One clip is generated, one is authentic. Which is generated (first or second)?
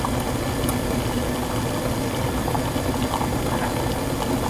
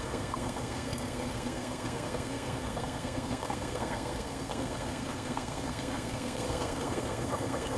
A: second